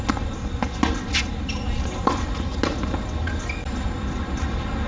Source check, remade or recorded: recorded